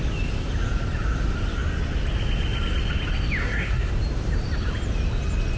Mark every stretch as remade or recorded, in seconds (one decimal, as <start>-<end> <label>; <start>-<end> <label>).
0.0-3.4 recorded; 3.4-3.9 remade; 3.9-5.6 recorded